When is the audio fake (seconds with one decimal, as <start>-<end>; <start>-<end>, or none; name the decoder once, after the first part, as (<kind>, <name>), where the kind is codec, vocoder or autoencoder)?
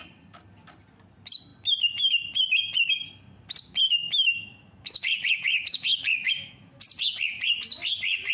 4.0-6.8 (autoencoder, DAC-VAE)